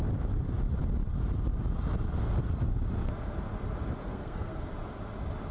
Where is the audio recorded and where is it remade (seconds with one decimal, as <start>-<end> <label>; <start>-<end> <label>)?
0.0-4.0 recorded; 4.0-4.6 remade; 4.6-5.5 recorded